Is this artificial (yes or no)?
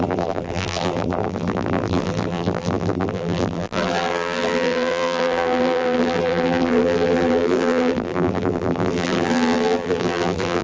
yes